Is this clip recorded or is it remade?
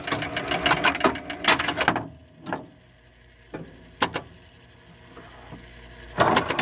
recorded